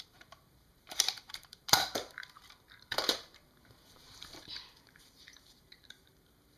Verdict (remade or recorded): remade